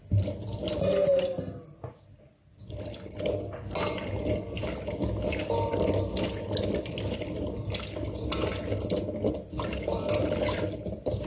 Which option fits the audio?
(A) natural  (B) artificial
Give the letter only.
A